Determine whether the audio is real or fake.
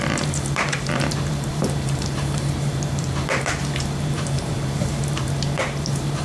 fake